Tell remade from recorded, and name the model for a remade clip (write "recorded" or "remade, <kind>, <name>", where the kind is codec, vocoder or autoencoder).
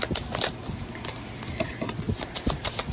recorded